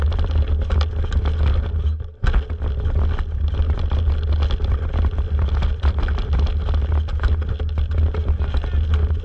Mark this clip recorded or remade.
recorded